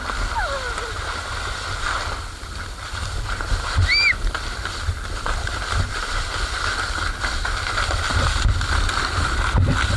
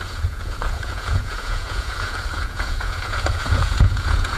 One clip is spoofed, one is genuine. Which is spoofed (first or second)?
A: second